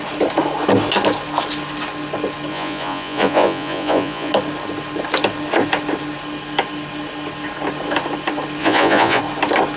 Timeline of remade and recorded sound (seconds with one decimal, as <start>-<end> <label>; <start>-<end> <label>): 0.0-2.5 recorded; 2.5-4.3 remade; 4.3-8.6 recorded; 8.6-9.2 remade; 9.2-9.8 recorded